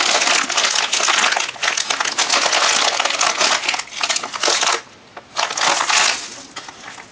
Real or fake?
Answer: real